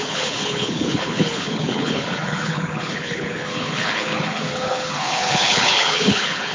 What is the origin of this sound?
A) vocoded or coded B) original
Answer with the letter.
A